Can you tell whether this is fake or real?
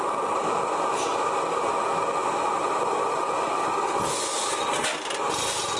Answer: real